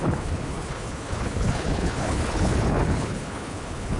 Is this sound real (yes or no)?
no